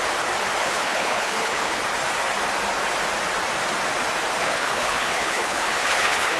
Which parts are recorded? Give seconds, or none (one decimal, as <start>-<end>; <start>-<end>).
0.0-0.6; 1.8-4.4